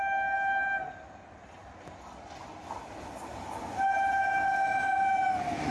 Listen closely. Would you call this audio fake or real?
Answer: real